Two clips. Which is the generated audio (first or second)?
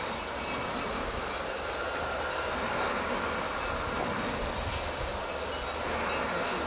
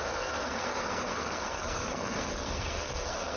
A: second